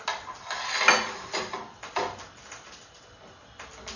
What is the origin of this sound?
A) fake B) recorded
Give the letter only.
B